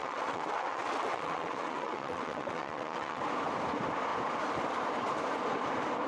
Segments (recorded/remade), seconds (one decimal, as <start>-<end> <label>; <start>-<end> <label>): 0.0-3.2 remade; 3.2-6.1 recorded